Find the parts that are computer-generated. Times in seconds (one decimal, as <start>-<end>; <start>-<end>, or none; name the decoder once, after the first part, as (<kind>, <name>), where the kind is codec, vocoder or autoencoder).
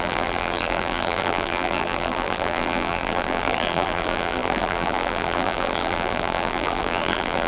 0.0-7.5 (vocoder, BigVGAN v2)